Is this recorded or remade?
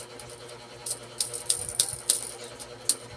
recorded